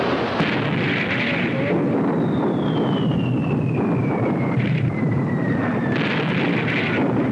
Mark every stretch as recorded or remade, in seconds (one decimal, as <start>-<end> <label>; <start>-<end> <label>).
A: 0.0-4.0 recorded; 4.0-5.7 remade; 5.7-7.3 recorded